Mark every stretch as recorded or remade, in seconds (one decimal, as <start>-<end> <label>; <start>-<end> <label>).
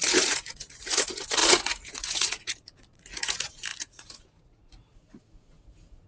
0.0-6.1 remade